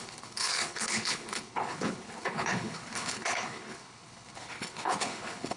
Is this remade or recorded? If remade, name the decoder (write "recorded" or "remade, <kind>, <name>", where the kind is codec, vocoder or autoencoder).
remade, codec, HILCodec